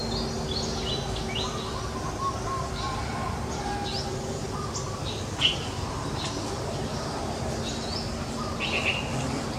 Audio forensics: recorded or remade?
recorded